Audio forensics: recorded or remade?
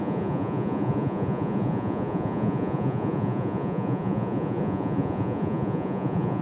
remade